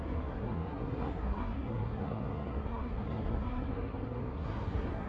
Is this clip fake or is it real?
fake